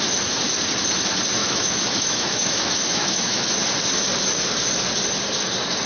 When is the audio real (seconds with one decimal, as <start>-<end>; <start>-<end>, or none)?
0.0-1.4; 3.4-5.9